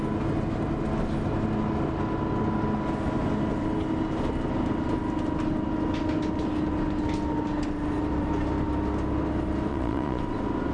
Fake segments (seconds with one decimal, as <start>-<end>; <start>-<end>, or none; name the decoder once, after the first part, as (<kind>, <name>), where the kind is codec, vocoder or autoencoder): 9.7-10.2 (vocoder, Vocos)